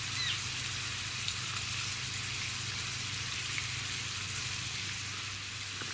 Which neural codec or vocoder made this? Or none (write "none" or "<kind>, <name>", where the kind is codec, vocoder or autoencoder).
none